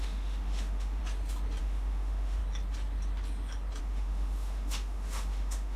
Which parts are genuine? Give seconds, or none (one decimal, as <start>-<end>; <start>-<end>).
1.0-1.6; 2.4-3.8